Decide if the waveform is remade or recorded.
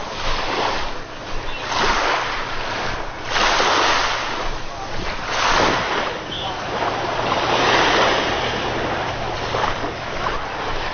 recorded